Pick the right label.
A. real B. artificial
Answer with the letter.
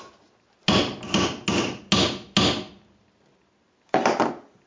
A